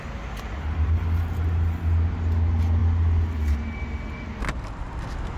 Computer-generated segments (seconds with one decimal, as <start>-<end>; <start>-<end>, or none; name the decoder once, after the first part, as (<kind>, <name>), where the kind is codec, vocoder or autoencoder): none